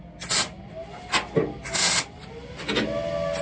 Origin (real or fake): real